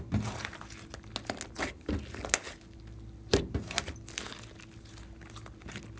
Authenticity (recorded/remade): recorded